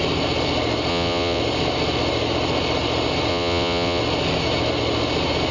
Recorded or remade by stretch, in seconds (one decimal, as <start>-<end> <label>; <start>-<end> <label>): 0.0-0.9 recorded; 0.9-1.4 remade; 1.4-3.3 recorded; 3.3-4.0 remade; 4.0-5.5 recorded